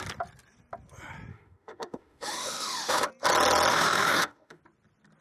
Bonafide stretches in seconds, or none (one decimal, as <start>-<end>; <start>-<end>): 0.0-1.3; 3.1-3.7; 4.6-5.2